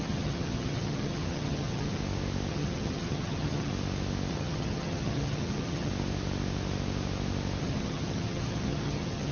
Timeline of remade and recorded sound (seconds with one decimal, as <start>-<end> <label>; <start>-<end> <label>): 0.0-2.0 remade; 2.0-2.5 recorded; 2.5-3.7 remade; 3.7-4.3 recorded; 4.3-5.9 remade; 5.9-7.6 recorded; 7.6-9.3 remade